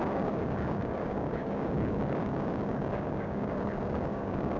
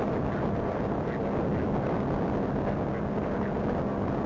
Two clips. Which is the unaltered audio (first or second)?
second